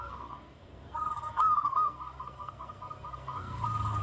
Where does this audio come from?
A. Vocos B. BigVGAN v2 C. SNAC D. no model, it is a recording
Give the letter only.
C